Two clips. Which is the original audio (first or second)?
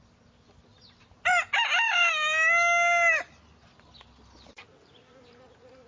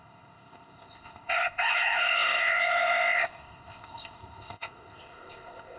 first